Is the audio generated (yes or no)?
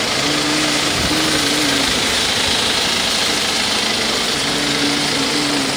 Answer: no